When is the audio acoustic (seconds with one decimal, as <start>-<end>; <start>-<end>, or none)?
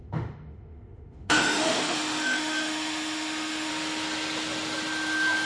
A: 3.7-5.5